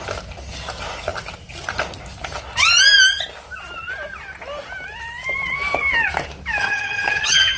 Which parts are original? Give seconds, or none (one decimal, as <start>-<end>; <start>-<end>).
0.0-6.6